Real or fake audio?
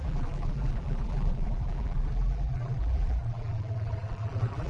fake